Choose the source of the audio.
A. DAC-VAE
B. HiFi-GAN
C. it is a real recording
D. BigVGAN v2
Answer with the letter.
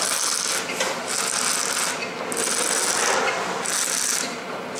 C